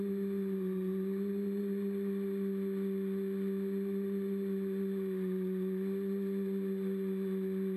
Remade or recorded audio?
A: recorded